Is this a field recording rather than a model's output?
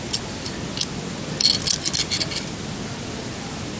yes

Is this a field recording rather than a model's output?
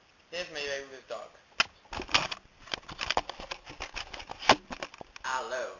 yes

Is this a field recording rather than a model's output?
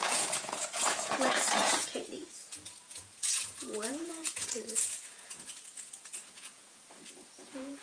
no